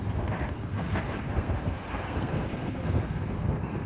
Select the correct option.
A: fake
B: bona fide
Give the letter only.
A